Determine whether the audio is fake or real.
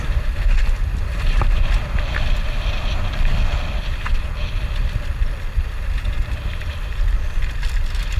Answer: real